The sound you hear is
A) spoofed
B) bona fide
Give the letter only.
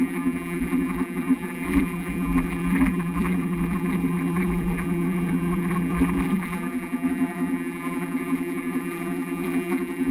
A